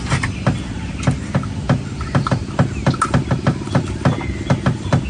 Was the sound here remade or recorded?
recorded